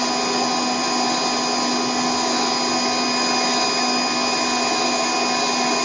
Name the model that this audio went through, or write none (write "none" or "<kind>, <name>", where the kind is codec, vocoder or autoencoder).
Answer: none